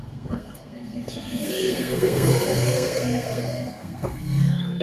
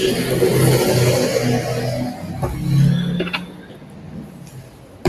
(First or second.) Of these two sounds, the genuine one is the second